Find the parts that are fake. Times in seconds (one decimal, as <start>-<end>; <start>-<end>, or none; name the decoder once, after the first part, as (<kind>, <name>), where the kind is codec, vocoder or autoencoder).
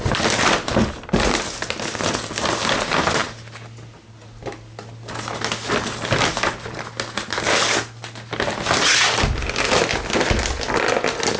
none